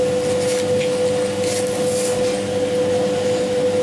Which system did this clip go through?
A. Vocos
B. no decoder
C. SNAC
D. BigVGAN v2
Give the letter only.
B